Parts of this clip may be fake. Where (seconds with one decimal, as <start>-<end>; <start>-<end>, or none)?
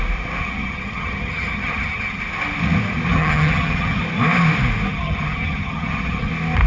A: 0.4-2.2; 3.1-4.0; 4.9-6.3